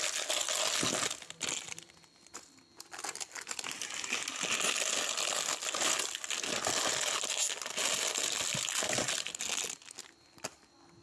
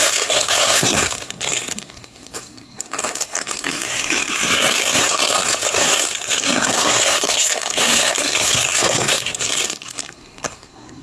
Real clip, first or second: first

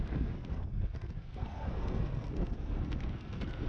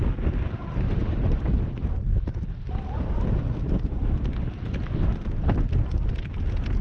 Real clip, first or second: second